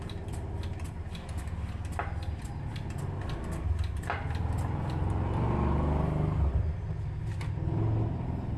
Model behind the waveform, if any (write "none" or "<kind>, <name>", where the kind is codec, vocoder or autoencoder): none